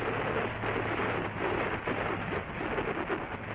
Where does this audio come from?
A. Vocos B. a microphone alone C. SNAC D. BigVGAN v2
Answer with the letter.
B